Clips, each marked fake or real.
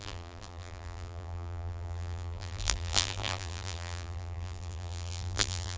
fake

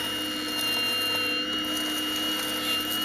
real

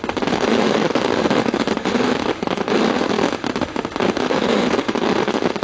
fake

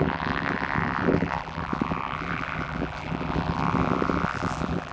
fake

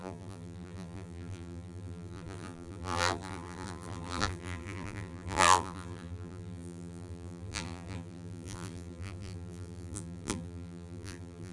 fake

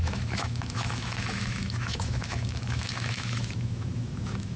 fake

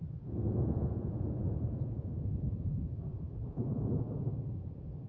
fake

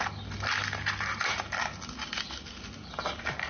real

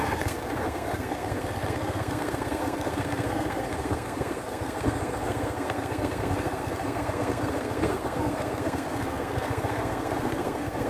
fake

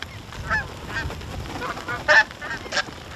real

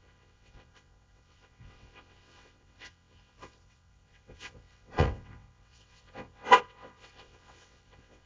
fake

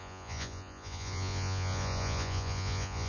fake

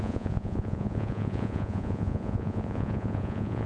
fake